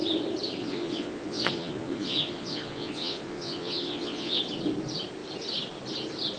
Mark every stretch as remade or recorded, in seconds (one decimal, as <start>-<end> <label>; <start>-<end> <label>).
0.0-0.6 recorded; 0.6-4.4 remade; 4.4-6.4 recorded